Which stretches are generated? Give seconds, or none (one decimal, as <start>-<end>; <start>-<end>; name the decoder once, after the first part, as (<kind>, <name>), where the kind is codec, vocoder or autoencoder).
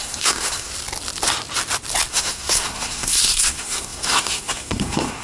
0.0-0.7 (codec, SNAC); 2.1-5.2